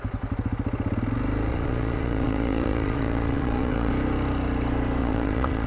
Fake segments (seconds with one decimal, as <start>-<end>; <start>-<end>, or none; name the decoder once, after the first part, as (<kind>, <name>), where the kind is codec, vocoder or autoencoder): 1.5-3.9 (vocoder, Vocos); 5.0-5.7